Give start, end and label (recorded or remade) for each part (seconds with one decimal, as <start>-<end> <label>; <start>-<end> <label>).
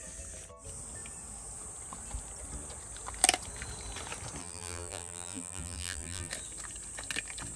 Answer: 0.0-4.4 recorded; 4.4-6.3 remade; 6.3-7.6 recorded